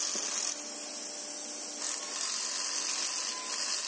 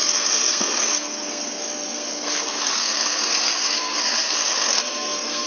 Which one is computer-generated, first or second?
second